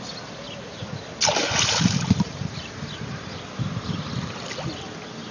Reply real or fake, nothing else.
real